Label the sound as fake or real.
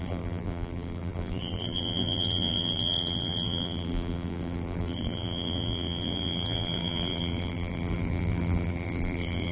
fake